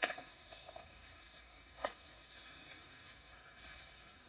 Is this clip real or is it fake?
fake